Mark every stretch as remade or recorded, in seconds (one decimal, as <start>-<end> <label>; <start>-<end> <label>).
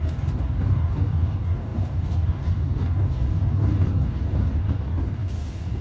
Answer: 0.0-5.8 remade